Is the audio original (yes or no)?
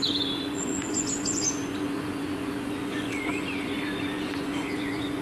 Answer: no